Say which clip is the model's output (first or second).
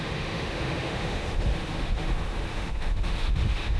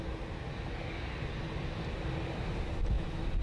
first